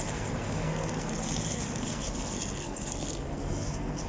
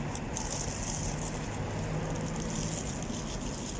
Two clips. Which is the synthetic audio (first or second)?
first